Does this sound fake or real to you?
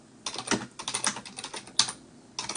real